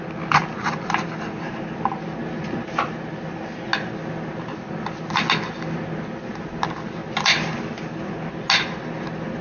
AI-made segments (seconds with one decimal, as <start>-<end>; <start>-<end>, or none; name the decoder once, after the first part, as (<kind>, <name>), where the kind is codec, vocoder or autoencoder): none